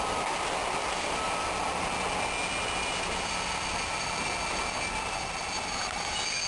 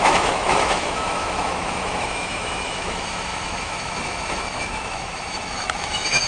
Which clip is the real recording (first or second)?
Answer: first